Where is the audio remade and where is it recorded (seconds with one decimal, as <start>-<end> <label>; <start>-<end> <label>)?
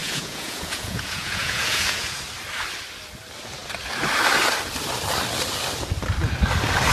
0.0-2.2 remade; 2.2-6.9 recorded